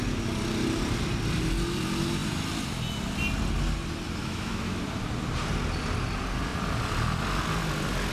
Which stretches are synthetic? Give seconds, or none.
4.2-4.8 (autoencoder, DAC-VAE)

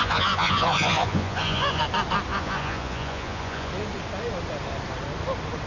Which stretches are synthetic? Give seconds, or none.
0.0-1.8 (vocoder, Vocos); 2.3-3.7

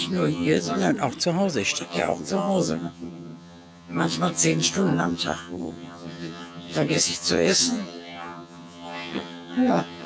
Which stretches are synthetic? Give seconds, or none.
0.0-0.9 (vocoder, HiFi-GAN); 1.8-10.1

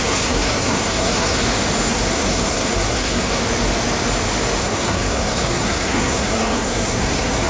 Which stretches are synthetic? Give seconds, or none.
0.0-1.4 (codec, SNAC); 1.9-3.4; 4.6-7.5

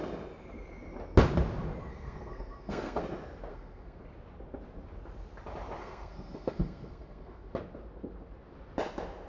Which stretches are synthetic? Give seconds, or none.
1.9-3.0 (codec, SNAC); 3.5-4.0; 5.8-7.5

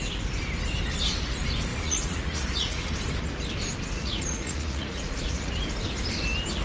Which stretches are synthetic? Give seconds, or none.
1.7-2.9 (vocoder, Vocos); 4.0-5.6

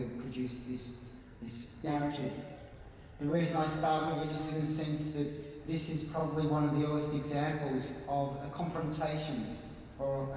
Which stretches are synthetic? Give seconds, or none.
1.2-4.6 (codec, SNAC); 5.1-5.6